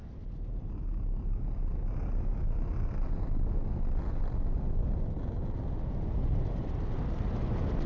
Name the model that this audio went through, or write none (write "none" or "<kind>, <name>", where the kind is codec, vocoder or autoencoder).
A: none